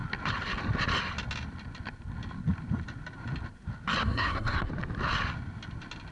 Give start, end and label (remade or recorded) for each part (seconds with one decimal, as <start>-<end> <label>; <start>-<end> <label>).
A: 0.0-4.0 recorded; 4.0-4.7 remade; 4.7-6.1 recorded